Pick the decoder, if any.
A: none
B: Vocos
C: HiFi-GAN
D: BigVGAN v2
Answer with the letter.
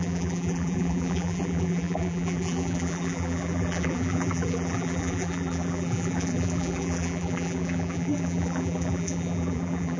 D